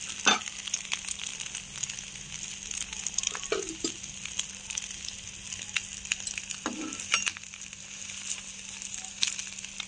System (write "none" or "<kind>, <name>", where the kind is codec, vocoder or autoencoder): none